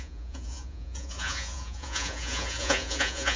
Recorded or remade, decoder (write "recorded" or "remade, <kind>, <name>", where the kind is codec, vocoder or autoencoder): remade, vocoder, Vocos